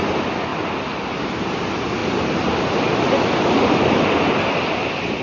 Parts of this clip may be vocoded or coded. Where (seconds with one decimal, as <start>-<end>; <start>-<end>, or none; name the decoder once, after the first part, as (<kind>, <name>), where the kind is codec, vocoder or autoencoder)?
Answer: none